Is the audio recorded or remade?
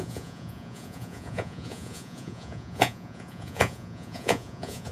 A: remade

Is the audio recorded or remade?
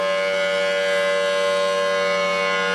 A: recorded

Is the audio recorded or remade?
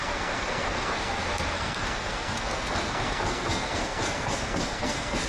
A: remade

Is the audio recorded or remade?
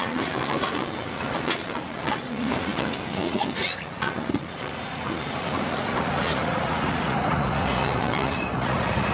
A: remade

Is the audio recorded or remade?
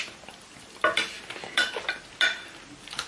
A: recorded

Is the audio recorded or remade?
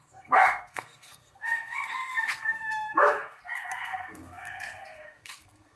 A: remade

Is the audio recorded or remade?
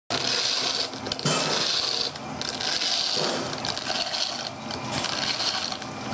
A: recorded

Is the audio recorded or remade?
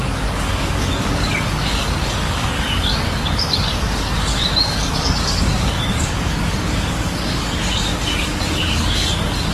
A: remade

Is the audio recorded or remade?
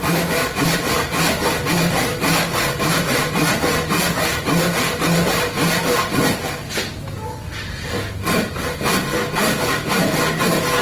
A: recorded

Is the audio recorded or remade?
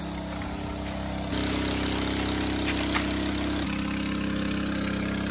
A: recorded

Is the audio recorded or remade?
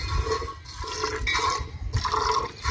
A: recorded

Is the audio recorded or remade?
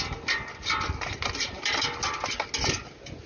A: recorded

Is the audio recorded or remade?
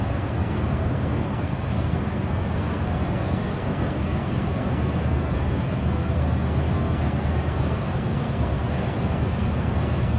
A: remade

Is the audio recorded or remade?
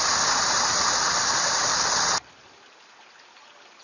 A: recorded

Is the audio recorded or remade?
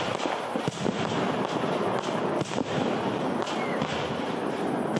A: recorded